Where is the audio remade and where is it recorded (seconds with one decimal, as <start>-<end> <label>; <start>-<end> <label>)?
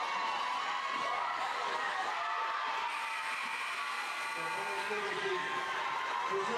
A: 0.0-1.0 recorded; 1.0-2.1 remade; 2.1-4.7 recorded; 4.7-5.8 remade; 5.8-6.6 recorded